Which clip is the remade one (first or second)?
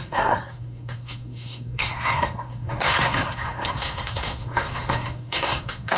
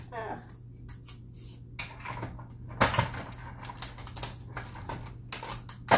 first